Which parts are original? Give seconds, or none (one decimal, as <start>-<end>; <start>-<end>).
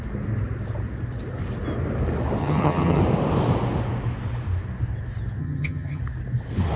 0.0-2.4; 3.0-5.4; 6.0-6.8